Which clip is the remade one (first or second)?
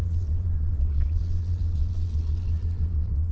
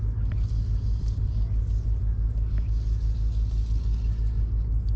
first